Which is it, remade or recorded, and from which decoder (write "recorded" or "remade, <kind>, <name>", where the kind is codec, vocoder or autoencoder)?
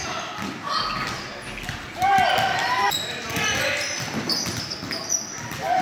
recorded